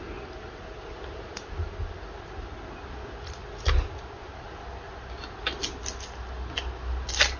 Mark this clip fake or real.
real